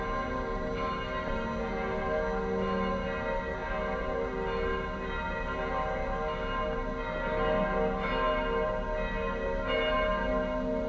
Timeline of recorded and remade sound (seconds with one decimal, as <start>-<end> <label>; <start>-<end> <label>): 0.0-10.9 recorded